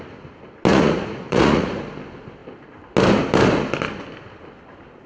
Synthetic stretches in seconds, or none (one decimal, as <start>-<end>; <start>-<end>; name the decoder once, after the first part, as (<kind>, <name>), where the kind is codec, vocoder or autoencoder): 0.7-1.8 (vocoder, Vocos)